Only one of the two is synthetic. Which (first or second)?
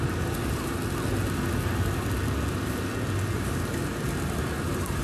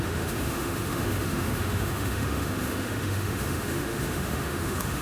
second